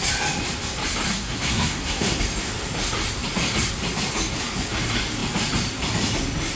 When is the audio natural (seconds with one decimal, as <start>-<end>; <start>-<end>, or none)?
0.0-1.1; 2.2-6.6